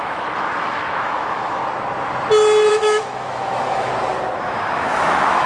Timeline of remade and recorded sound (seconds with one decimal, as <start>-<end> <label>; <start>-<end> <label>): 0.0-1.6 remade; 1.6-2.7 recorded; 2.7-3.9 remade; 3.9-4.4 recorded; 4.4-5.5 remade